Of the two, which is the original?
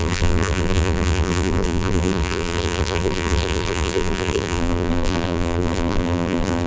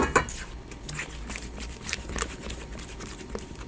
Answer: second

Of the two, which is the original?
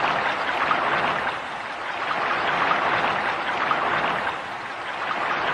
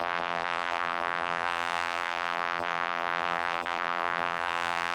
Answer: first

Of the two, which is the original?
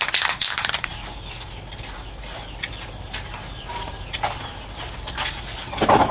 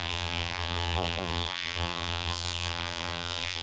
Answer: first